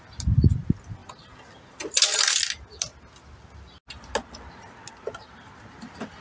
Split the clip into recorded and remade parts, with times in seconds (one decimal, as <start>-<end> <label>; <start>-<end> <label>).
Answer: 0.0-6.2 recorded